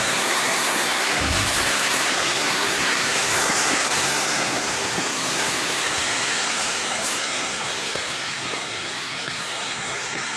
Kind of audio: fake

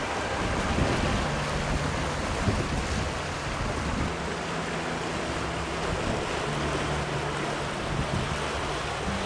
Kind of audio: real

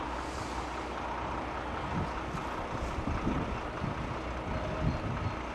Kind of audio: real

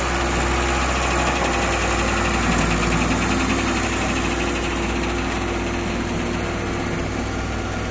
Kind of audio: real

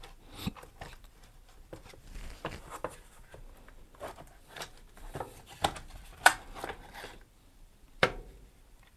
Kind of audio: fake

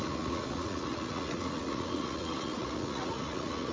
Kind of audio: fake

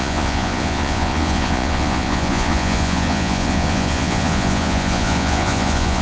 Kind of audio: fake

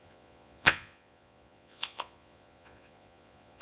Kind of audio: fake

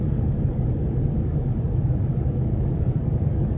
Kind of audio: fake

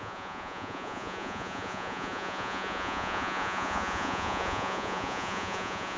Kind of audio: fake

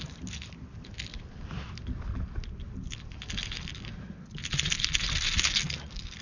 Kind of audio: real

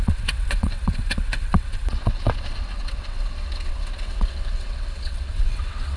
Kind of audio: fake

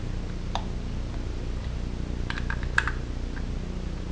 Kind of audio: real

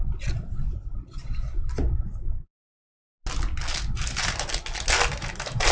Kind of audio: real